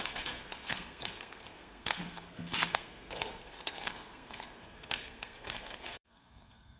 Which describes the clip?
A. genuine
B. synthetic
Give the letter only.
B